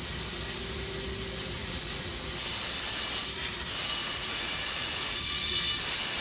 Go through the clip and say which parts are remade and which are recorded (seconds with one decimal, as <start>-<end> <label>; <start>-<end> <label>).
0.0-1.6 recorded; 1.6-2.3 remade; 2.3-4.0 recorded; 4.0-5.6 remade; 5.6-6.2 recorded